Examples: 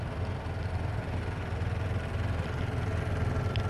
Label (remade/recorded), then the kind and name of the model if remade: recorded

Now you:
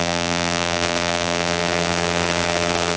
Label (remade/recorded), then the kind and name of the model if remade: remade, vocoder, BigVGAN v2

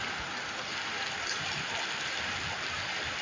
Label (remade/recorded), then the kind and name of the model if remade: recorded